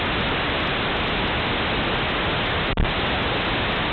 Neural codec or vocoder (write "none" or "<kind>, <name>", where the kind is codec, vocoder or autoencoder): none